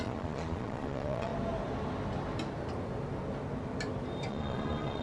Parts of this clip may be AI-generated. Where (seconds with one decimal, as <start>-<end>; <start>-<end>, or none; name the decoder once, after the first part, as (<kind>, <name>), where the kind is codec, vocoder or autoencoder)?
0.0-1.3 (vocoder, Vocos); 4.3-5.0